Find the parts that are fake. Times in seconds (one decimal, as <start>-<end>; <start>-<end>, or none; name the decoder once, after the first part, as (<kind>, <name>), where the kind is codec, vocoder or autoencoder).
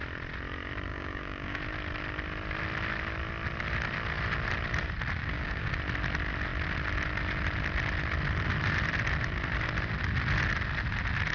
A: 0.9-1.6 (codec, DAC); 5.2-5.7